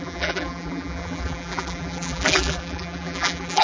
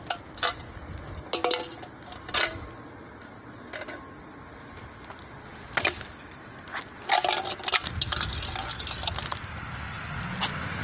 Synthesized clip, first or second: first